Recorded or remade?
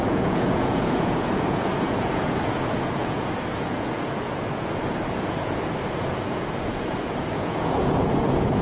remade